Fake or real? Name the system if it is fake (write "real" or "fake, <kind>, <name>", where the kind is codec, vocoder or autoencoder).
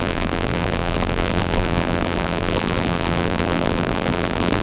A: fake, vocoder, BigVGAN v2